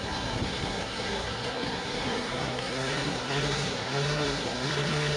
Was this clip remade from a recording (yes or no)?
yes